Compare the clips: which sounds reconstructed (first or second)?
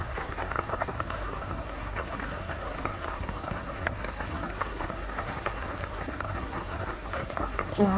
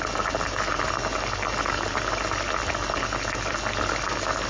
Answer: first